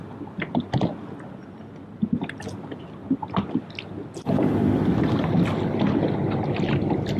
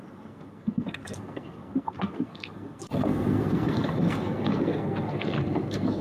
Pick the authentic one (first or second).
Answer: first